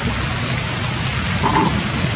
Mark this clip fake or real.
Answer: real